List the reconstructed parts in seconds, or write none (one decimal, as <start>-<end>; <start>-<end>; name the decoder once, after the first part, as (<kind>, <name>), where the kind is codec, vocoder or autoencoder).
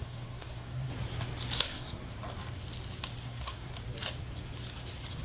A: 0.0-0.9 (codec, SNAC); 1.6-2.0; 3.2-3.7